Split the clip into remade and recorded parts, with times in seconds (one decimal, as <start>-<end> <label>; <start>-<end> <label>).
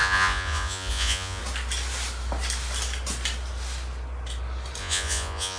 0.0-1.4 remade; 1.4-4.8 recorded; 4.8-5.6 remade